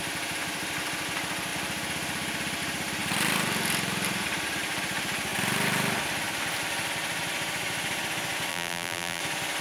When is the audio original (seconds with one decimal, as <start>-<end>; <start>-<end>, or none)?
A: 0.0-8.5; 9.2-9.6